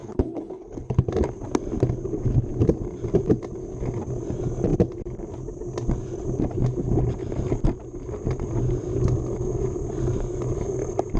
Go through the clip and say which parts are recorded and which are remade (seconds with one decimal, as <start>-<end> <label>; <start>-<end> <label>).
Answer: 0.0-1.1 remade; 1.1-11.2 recorded